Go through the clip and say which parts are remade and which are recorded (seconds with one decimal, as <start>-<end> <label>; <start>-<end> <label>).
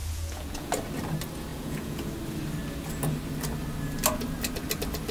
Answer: 0.0-0.7 remade; 0.7-1.5 recorded; 1.5-2.1 remade; 2.1-5.1 recorded